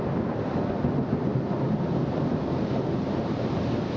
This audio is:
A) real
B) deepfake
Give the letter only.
A